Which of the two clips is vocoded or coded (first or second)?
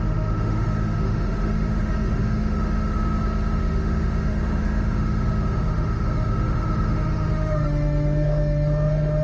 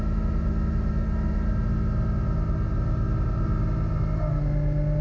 first